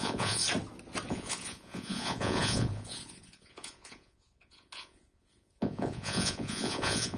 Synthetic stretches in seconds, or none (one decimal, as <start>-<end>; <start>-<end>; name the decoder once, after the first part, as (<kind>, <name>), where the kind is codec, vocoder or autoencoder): 0.0-0.4 (vocoder, Vocos); 1.1-7.2